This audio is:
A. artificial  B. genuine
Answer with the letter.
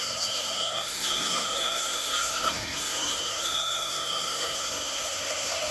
A